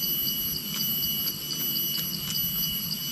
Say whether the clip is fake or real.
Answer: real